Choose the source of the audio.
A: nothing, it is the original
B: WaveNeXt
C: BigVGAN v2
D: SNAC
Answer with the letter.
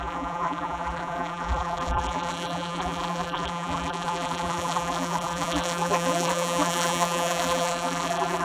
C